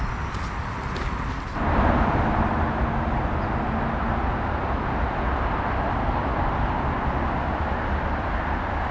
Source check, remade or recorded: recorded